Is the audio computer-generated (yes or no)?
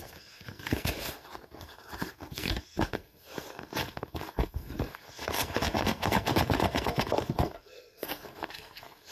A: yes